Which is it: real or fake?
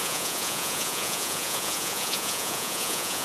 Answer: fake